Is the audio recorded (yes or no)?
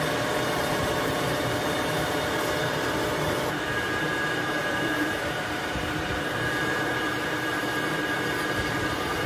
no